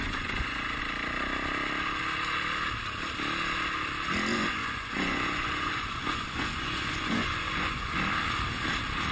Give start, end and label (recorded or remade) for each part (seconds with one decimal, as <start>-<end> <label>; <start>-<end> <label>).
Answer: 0.0-0.8 remade; 0.8-4.3 recorded; 4.3-8.0 remade; 8.0-9.1 recorded

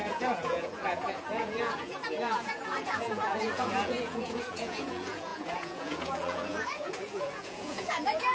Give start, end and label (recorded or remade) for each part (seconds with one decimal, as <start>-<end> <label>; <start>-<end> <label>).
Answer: 0.0-8.3 remade

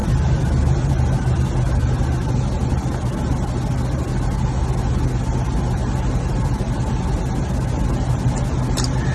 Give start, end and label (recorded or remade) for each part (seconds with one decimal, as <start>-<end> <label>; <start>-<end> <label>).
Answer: 0.0-9.1 recorded

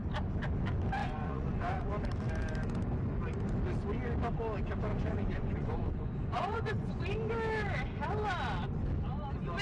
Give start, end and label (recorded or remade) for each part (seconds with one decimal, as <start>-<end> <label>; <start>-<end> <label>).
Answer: 0.0-1.0 recorded; 1.0-1.9 remade; 1.9-4.9 recorded; 4.9-7.0 remade; 7.0-9.6 recorded

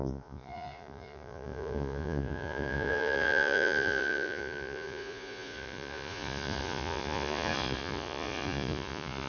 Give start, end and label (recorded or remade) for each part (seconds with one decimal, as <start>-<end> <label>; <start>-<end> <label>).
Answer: 0.0-9.3 remade

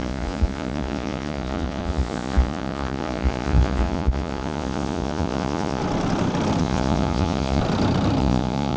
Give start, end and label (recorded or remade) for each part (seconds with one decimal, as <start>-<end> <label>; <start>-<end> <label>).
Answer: 0.0-5.8 remade; 5.8-6.6 recorded; 6.6-7.6 remade; 7.6-8.2 recorded; 8.2-8.8 remade